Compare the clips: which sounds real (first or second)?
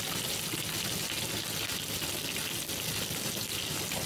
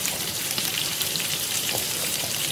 first